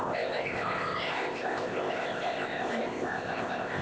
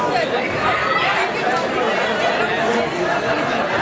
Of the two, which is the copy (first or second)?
first